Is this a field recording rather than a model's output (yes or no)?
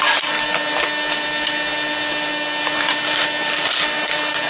yes